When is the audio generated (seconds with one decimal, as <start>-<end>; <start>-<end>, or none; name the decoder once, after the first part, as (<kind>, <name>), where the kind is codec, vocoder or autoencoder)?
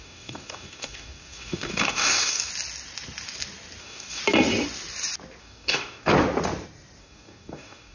0.0-2.5 (codec, DAC); 3.8-4.2; 5.4-6.1; 7.0-7.9